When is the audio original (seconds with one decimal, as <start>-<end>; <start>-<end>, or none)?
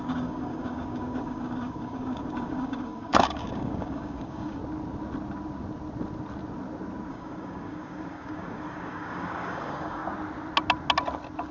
4.6-7.1; 10.0-11.5